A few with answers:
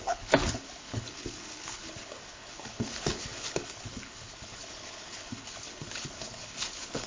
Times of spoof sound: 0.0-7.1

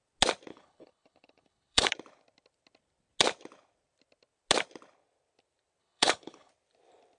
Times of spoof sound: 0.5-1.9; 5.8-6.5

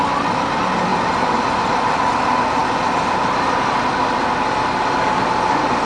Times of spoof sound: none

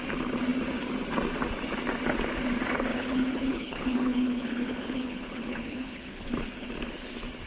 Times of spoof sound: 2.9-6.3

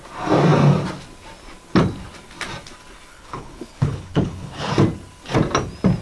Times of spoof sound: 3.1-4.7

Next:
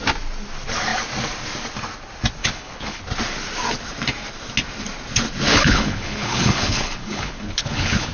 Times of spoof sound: 2.4-3.0; 5.5-8.1